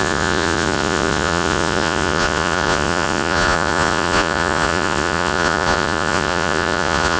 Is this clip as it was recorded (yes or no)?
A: no